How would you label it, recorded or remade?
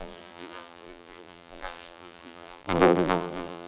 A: remade